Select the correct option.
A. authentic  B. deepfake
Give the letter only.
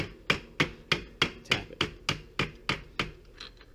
A